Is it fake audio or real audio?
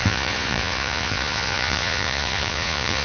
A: fake